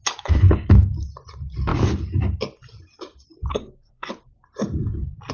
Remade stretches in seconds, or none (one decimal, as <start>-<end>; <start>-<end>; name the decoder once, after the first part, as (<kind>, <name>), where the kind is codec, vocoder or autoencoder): 3.5-4.1 (codec, SNAC)